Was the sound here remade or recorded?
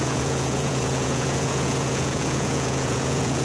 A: remade